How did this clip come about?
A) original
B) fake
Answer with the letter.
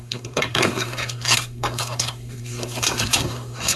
B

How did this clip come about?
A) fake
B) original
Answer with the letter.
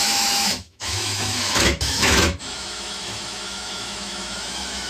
A